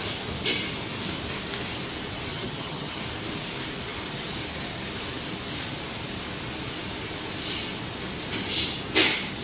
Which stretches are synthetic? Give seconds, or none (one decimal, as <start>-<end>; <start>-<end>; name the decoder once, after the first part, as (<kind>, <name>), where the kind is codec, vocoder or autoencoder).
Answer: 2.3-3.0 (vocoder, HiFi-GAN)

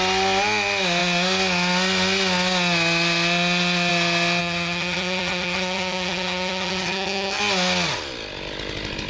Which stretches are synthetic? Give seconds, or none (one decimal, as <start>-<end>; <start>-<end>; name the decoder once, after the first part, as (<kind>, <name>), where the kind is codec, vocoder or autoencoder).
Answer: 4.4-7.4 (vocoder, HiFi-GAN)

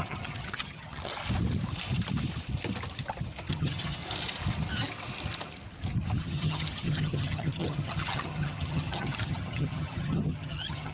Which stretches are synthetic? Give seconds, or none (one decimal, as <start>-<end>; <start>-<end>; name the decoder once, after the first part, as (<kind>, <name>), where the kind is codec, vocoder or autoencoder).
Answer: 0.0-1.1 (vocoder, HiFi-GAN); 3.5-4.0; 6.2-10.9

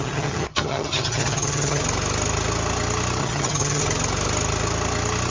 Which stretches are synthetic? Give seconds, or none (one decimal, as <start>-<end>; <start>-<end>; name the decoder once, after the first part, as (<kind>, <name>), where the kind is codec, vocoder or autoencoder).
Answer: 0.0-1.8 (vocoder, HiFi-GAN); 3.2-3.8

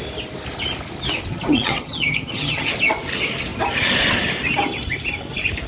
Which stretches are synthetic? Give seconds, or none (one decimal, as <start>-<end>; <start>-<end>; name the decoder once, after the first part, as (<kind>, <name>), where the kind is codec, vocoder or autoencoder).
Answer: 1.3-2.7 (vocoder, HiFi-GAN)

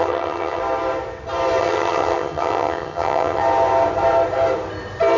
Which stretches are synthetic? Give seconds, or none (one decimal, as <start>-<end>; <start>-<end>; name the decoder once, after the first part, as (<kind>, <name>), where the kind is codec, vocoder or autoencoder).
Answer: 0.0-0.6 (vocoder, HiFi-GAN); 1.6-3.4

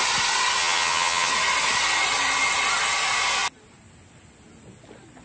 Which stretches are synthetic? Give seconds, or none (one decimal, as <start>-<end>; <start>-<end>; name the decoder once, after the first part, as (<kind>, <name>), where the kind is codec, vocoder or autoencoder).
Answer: 0.6-1.3 (vocoder, HiFi-GAN)

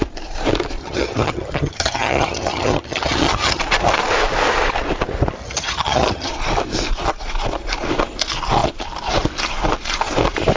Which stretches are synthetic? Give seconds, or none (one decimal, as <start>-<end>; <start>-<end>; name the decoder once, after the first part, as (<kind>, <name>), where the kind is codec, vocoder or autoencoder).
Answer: 0.8-3.6 (vocoder, HiFi-GAN); 5.4-6.3